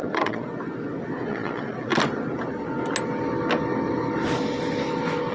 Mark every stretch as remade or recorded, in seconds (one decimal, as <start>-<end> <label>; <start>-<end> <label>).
0.0-0.5 remade; 0.5-1.3 recorded; 1.3-1.9 remade; 1.9-5.3 recorded